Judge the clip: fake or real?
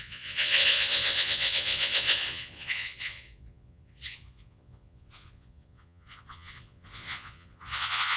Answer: fake